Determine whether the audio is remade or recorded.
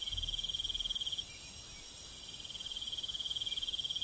recorded